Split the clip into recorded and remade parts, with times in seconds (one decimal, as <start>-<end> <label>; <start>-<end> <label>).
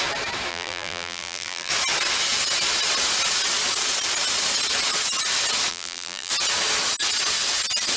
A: 0.0-0.5 recorded; 0.5-1.7 remade; 1.7-5.7 recorded; 5.7-6.3 remade; 6.3-8.0 recorded